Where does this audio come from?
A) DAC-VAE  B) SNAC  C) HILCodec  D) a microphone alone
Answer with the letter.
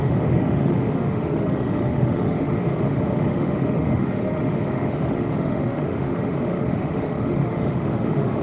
A